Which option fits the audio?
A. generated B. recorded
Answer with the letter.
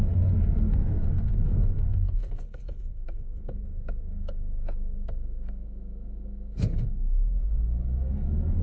A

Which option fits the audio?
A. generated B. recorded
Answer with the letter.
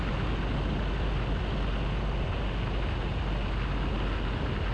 B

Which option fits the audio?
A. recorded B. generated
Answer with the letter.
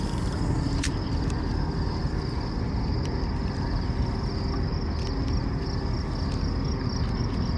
A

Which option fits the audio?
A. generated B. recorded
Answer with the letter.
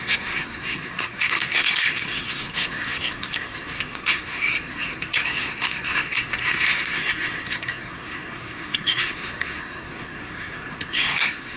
A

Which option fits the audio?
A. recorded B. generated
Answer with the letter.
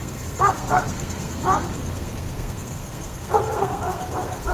B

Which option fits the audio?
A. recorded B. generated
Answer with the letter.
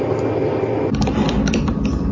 A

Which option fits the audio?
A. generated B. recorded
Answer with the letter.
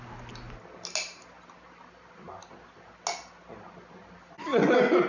B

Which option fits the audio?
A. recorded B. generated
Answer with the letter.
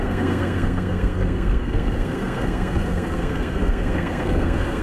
B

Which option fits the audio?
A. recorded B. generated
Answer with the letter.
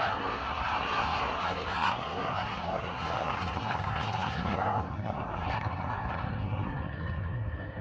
B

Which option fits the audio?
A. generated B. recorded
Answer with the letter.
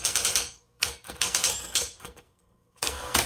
A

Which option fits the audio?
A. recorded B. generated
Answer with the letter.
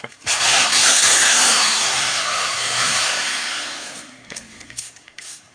B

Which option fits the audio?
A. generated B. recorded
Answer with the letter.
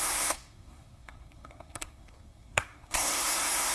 A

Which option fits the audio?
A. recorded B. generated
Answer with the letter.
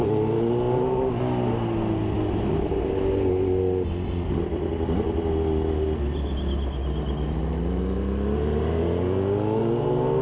A